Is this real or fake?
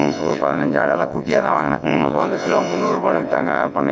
fake